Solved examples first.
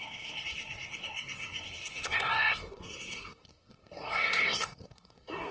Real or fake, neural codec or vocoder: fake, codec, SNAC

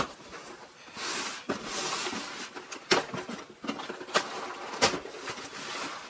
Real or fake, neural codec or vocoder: real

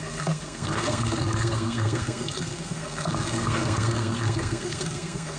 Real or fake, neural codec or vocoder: fake, codec, SNAC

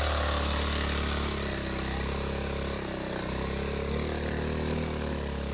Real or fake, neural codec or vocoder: real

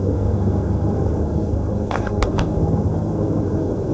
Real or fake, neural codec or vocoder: fake, codec, SNAC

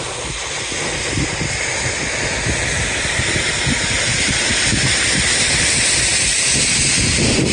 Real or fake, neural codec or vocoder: real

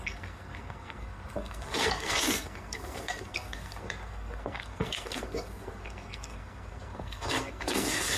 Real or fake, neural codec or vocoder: fake, codec, SNAC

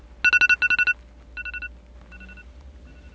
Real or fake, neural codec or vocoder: real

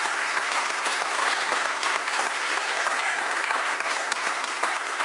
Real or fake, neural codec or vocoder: fake, codec, SNAC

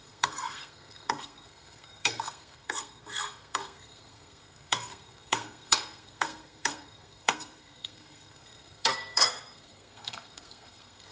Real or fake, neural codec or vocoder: fake, codec, SNAC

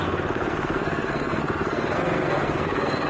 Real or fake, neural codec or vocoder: fake, codec, SNAC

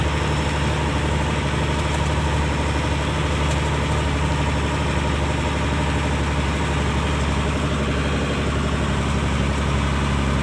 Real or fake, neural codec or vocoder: real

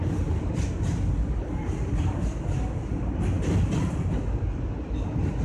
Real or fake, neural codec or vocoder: real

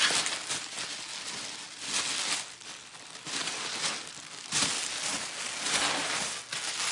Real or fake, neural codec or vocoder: real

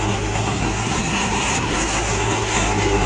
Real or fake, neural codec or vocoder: fake, codec, SNAC